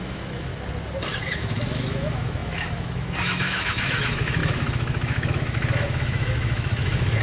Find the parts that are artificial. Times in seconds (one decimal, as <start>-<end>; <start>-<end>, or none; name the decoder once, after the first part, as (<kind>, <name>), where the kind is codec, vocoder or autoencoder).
0.0-0.5 (autoencoder, DAC-VAE); 1.3-7.2